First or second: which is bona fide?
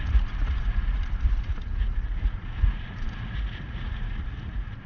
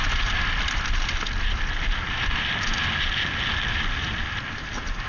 second